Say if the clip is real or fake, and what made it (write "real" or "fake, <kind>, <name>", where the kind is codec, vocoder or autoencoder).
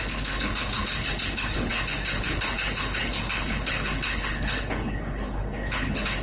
fake, codec, HILCodec